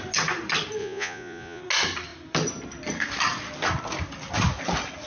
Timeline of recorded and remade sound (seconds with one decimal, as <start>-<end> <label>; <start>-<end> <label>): 0.0-0.8 recorded; 0.8-1.6 remade; 1.6-5.1 recorded

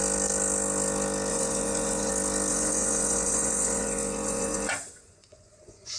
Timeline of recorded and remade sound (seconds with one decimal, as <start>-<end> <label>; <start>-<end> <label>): 0.0-1.3 recorded; 1.3-2.1 remade; 2.1-2.5 recorded; 2.5-6.0 remade

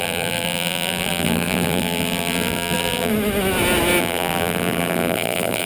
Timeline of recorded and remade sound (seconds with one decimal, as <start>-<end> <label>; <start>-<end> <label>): 0.0-3.1 remade; 3.1-4.0 recorded; 4.0-5.7 remade

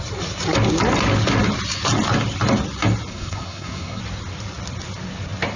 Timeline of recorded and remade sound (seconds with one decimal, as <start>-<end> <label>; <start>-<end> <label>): 0.0-3.1 recorded; 3.1-4.0 remade; 4.0-5.6 recorded

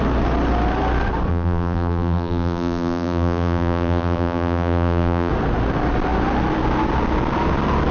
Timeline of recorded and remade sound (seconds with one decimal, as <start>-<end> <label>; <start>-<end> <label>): 0.0-1.3 recorded; 1.3-5.3 remade; 5.3-7.9 recorded

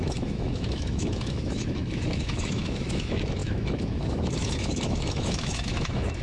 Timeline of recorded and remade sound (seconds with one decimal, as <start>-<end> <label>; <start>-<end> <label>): 0.0-6.2 remade

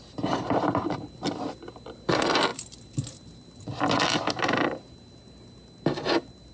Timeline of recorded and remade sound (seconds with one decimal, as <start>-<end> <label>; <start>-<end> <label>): 0.0-6.5 recorded

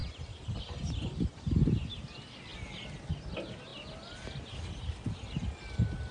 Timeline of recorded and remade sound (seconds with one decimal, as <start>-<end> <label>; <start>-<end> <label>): 0.0-6.1 recorded